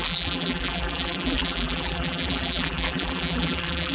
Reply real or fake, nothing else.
fake